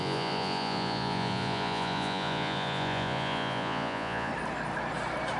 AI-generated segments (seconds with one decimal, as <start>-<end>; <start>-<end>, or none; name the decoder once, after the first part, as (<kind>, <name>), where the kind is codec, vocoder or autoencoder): 0.0-4.3 (vocoder, Vocos)